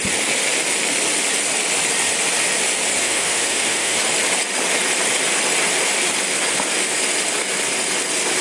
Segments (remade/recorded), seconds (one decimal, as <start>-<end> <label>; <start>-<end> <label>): 0.0-3.0 recorded; 3.0-4.0 remade; 4.0-8.4 recorded